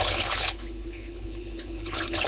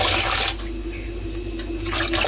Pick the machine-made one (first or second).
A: first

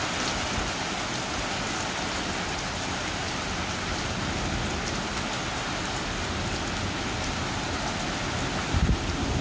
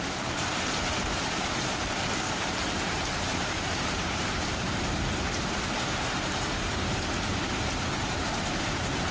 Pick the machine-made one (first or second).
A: second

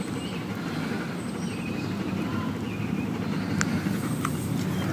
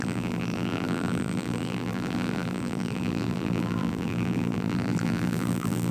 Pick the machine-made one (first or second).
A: second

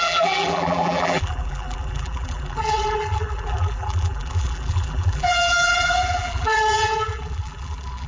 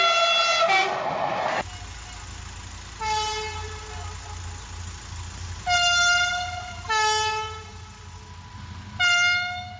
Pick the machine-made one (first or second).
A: first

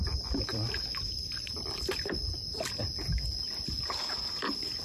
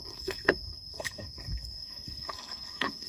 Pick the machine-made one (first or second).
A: second